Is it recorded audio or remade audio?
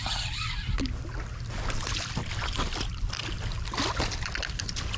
recorded